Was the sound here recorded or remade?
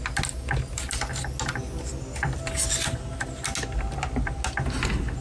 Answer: recorded